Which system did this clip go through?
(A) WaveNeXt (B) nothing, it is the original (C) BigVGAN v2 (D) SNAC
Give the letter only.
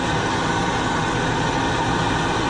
B